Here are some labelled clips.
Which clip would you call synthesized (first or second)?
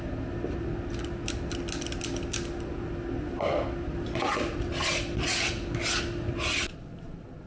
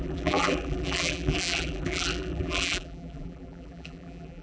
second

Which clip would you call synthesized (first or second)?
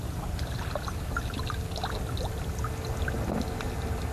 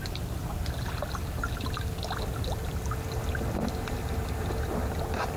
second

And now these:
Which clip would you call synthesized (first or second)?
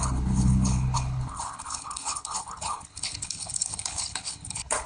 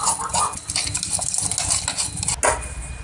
first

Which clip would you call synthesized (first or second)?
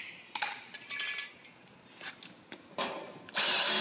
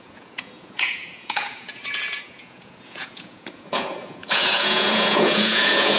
second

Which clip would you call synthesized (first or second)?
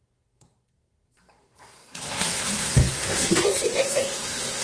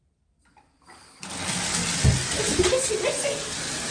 first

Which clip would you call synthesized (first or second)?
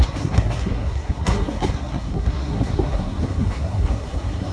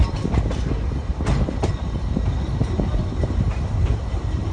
first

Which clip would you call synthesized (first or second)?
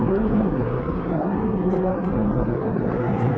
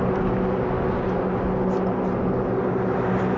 first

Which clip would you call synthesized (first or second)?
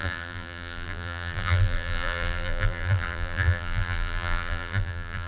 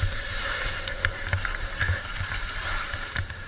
first